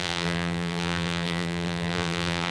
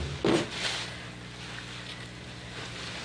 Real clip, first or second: second